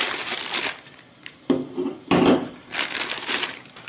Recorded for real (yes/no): yes